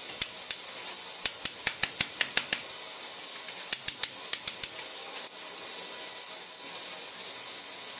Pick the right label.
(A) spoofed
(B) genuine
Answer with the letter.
B